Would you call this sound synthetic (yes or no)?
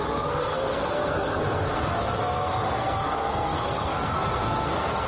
yes